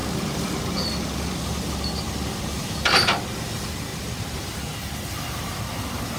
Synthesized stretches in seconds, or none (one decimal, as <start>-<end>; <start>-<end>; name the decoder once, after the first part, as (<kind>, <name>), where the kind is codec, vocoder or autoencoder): 2.6-3.2 (vocoder, BigVGAN v2); 3.9-4.5